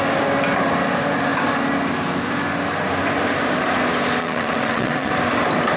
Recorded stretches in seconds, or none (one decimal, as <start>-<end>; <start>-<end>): 0.0-4.2; 5.1-5.8